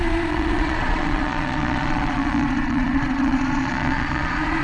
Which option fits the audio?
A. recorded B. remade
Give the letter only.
B